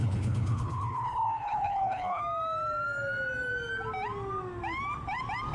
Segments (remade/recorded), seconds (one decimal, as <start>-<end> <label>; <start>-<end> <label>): 0.0-2.2 remade; 2.2-5.5 recorded